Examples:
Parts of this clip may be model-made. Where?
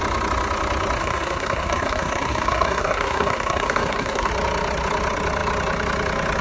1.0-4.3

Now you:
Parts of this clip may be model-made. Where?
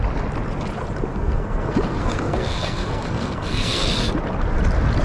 1.1-4.1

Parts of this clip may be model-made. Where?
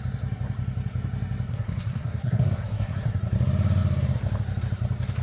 1.5-3.2